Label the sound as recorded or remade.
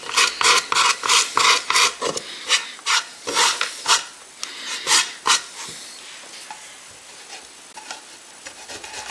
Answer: recorded